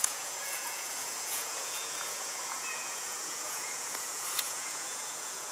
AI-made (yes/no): yes